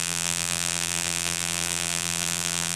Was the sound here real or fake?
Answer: fake